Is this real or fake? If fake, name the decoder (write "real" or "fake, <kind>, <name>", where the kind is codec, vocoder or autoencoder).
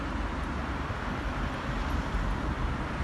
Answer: fake, vocoder, BigVGAN v2